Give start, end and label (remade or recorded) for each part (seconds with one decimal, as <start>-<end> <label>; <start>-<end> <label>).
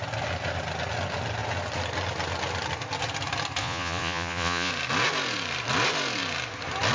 0.0-3.6 recorded; 3.6-4.7 remade; 4.7-6.9 recorded